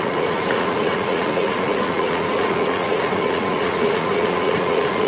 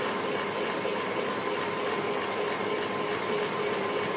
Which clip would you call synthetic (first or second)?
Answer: first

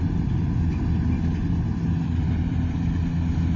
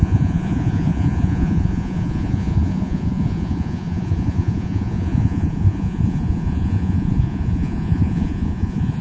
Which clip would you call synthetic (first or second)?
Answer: second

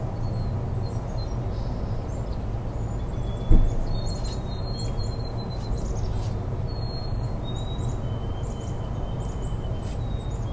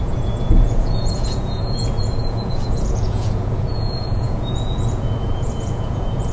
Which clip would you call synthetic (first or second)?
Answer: second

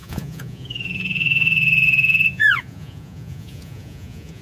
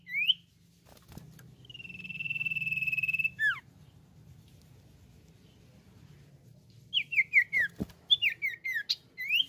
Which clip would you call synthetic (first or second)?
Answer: first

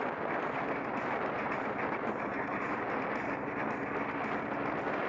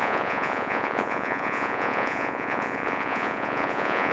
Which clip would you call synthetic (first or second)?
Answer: second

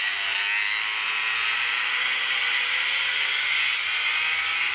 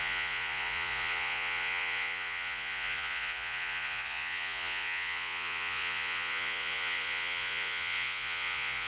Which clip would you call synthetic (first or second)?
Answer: second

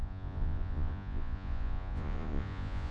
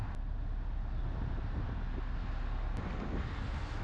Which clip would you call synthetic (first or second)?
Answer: first